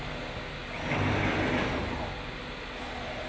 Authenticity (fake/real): real